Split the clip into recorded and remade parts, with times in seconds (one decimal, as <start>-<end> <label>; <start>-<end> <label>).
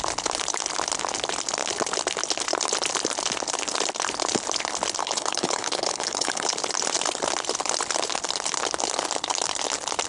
0.0-5.0 recorded; 5.0-6.5 remade; 6.5-10.1 recorded